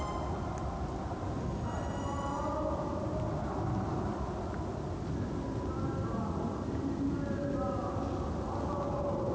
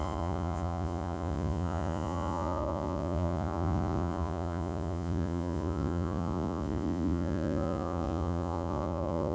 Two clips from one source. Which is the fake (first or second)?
second